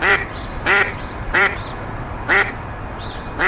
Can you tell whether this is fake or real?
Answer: fake